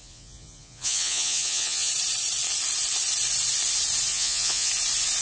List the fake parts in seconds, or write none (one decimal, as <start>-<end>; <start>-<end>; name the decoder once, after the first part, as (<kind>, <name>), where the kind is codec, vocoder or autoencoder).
0.0-1.9 (vocoder, Vocos); 4.1-4.7